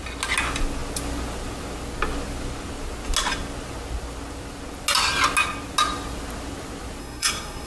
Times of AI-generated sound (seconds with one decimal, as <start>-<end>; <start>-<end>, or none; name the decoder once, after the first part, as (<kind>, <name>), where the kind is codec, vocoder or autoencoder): 7.0-7.7 (codec, SNAC)